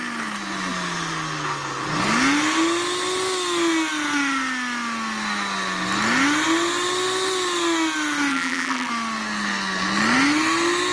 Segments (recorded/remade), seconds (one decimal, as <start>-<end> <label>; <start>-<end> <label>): 0.0-8.3 recorded; 8.3-8.9 remade; 8.9-10.9 recorded